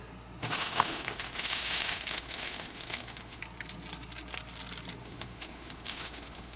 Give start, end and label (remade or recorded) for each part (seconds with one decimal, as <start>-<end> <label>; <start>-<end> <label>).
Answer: 0.0-0.4 recorded; 0.4-3.4 remade; 3.4-5.0 recorded; 5.0-6.6 remade